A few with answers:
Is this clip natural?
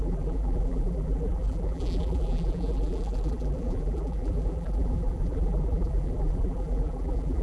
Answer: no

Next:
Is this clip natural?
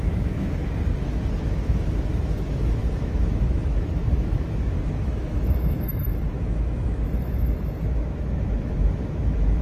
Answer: no